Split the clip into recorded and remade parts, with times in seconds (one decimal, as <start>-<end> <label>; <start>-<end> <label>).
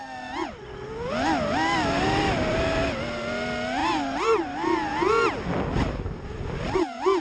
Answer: 0.0-3.8 recorded; 3.8-4.9 remade; 4.9-7.2 recorded